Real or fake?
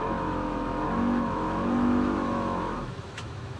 fake